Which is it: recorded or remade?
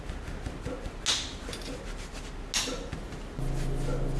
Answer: recorded